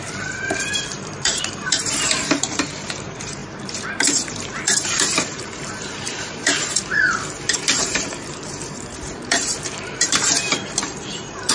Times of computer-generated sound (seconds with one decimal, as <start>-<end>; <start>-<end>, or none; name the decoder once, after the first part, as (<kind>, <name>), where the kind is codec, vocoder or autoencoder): 0.0-11.5 (vocoder, BigVGAN v2)